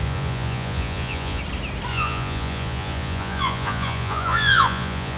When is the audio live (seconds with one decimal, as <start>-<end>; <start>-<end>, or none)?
1.4-1.9